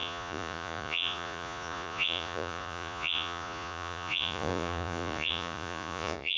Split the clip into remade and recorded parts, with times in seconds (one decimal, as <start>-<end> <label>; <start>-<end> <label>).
0.0-6.4 remade